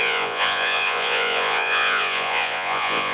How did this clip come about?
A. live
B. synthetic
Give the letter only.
B